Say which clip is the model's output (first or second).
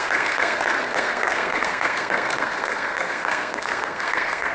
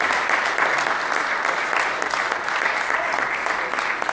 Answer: first